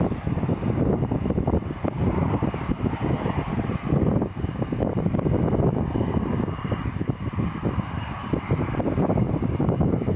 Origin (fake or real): fake